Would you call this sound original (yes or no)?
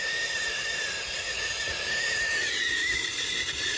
yes